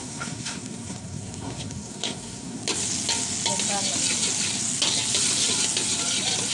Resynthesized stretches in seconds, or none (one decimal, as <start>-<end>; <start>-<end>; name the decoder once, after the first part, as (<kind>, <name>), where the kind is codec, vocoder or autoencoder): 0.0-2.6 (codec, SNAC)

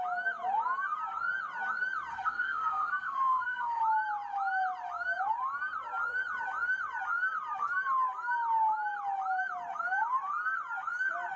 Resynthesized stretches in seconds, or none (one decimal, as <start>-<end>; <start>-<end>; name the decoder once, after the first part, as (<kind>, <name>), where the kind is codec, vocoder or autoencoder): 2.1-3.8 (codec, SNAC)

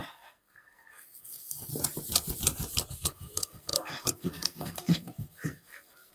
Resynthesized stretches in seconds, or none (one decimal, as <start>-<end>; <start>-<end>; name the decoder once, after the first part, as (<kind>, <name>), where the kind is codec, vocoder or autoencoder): 0.0-1.7 (codec, SNAC); 2.9-6.1